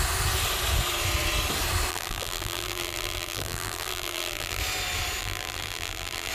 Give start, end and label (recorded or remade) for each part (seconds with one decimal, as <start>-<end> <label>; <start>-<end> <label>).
0.0-1.9 recorded; 1.9-4.6 remade; 4.6-5.2 recorded; 5.2-6.3 remade